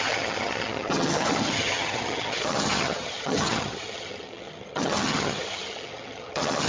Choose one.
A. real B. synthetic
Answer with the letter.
B